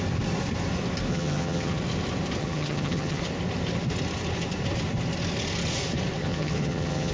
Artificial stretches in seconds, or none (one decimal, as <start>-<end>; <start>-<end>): 1.1-1.8; 2.4-3.2; 6.2-7.1